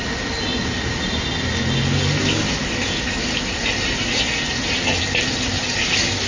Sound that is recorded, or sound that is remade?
recorded